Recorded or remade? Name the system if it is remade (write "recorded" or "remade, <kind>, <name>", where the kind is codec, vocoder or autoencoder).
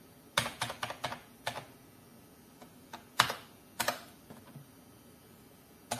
remade, vocoder, BigVGAN v2